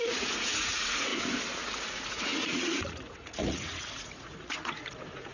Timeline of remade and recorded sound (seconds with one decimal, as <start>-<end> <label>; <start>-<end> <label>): 0.0-1.1 remade; 1.1-1.9 recorded; 1.9-5.3 remade